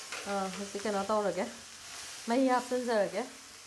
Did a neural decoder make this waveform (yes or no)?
no